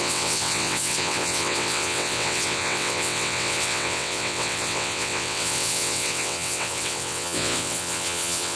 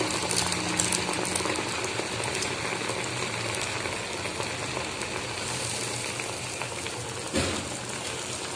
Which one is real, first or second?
second